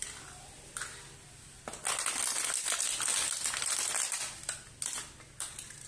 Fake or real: real